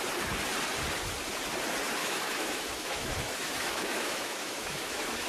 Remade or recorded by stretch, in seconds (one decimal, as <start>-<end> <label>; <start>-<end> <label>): 0.0-2.0 recorded; 2.0-5.3 remade